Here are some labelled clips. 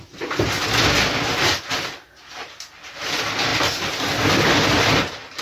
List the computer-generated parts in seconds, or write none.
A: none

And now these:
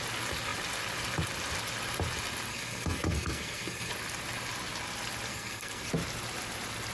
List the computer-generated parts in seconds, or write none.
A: 2.5-3.9 (codec, SNAC); 5.3-5.9

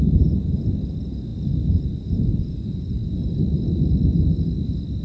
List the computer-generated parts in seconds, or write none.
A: none

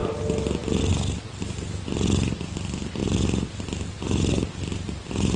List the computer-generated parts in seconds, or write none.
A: none

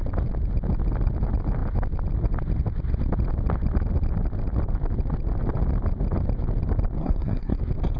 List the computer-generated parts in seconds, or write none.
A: 7.0-7.6 (codec, SNAC)

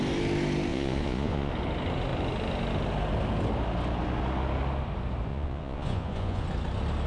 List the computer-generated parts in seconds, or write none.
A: 0.7-1.5 (vocoder, Vocos); 5.3-6.4

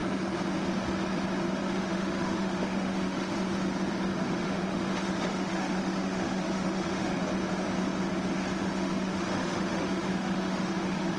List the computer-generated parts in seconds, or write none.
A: 1.6-3.4 (autoencoder, DAC-VAE); 4.2-7.2; 8.7-11.2

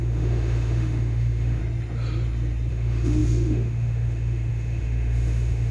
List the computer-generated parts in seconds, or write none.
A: 0.0-1.6 (autoencoder, DAC-VAE); 2.7-5.7